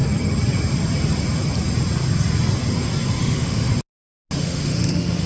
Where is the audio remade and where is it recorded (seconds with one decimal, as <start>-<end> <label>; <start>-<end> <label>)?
0.0-3.2 recorded; 3.2-3.7 remade; 3.7-4.4 recorded; 4.4-5.3 remade